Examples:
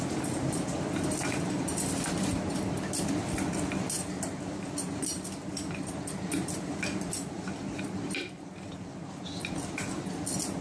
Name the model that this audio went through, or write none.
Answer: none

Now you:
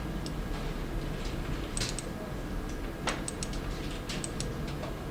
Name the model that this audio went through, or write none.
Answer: none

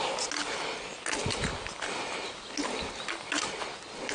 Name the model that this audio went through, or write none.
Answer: none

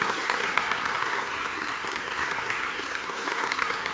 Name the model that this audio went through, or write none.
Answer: codec, SNAC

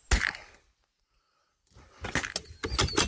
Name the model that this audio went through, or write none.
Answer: none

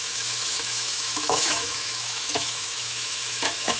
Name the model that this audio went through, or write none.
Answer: autoencoder, DAC-VAE